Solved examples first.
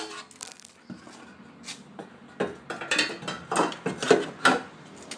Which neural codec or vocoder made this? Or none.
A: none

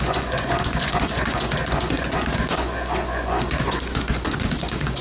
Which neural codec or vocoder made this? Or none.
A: vocoder, Vocos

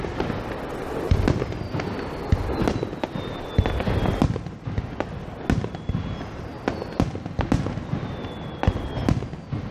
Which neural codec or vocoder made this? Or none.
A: none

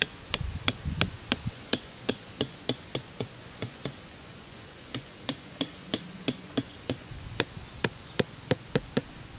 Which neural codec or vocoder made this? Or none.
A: vocoder, Vocos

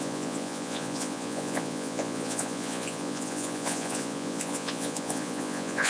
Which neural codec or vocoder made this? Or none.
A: vocoder, Vocos